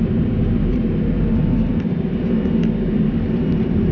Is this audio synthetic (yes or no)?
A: yes